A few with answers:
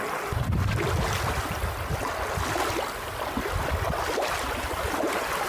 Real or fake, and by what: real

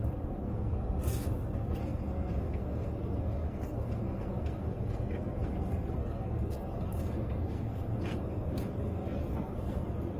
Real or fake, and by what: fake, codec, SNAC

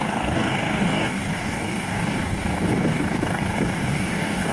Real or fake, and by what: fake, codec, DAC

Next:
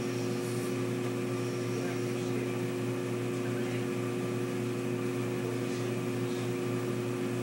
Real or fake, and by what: real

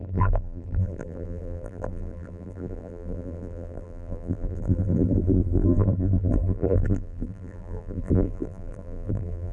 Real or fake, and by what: fake, vocoder, BigVGAN v2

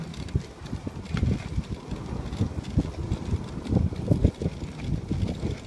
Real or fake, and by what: real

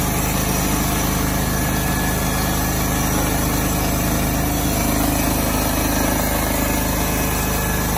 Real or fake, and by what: real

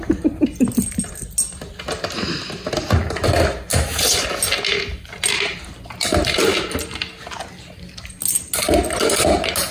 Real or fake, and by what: real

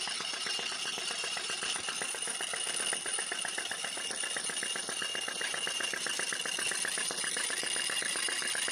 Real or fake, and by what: real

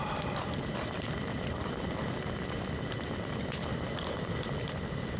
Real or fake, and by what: real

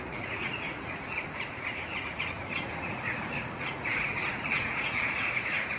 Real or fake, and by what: fake, vocoder, Vocos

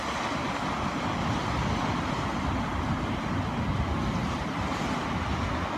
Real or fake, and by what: real